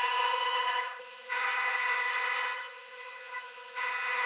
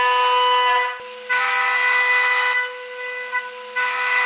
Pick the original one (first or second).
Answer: second